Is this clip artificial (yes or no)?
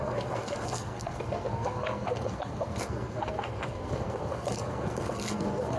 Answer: yes